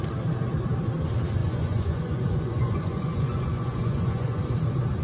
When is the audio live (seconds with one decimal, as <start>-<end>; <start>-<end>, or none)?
0.0-1.4; 4.4-5.0